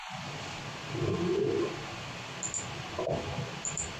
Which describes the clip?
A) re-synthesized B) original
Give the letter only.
B